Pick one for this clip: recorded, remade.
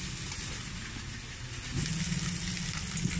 recorded